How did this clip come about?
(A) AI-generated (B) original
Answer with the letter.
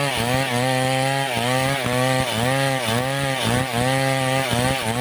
B